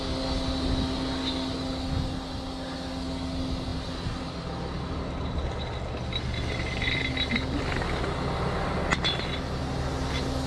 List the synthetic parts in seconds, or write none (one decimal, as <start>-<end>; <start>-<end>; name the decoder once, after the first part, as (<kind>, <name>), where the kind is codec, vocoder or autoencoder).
none